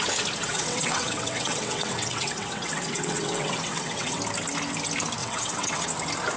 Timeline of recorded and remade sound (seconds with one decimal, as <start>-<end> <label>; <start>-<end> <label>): 0.0-0.4 recorded; 0.4-4.2 remade; 4.2-5.2 recorded; 5.2-5.9 remade; 5.9-6.4 recorded